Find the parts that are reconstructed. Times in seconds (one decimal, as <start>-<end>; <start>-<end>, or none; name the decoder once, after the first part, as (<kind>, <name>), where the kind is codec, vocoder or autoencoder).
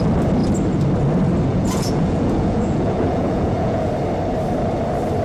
1.5-3.9 (vocoder, Vocos)